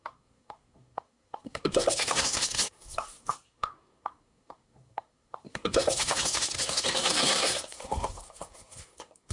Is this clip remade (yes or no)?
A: yes